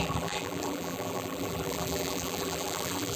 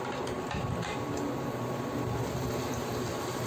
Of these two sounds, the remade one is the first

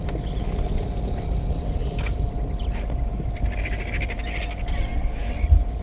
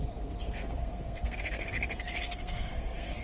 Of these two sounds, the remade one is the second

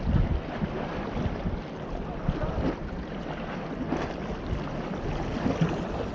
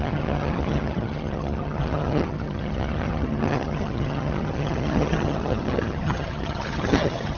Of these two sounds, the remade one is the second